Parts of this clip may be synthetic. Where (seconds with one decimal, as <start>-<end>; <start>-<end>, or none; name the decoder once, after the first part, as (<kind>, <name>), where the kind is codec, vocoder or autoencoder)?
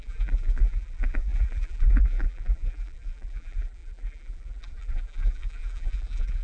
0.0-6.4 (vocoder, BigVGAN v2)